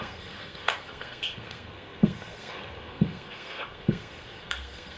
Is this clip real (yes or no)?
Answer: no